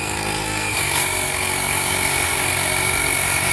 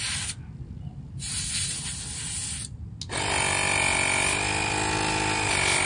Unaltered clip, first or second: second